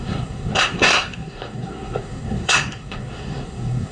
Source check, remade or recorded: remade